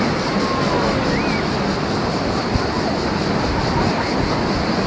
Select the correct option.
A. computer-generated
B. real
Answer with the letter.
B